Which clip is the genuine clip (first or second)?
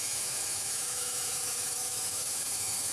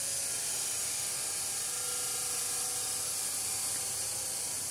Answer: second